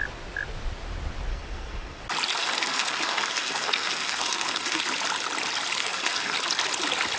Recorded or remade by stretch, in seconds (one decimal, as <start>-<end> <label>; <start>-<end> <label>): 0.0-1.3 recorded; 1.3-2.0 remade; 2.0-2.4 recorded; 2.4-4.8 remade; 4.8-5.8 recorded; 5.8-6.3 remade; 6.3-7.2 recorded